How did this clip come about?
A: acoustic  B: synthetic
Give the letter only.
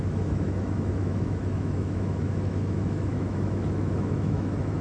B